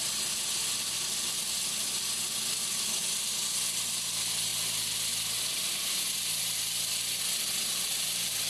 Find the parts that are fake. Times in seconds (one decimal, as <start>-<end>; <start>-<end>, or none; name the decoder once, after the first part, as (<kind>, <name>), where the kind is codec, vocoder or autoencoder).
none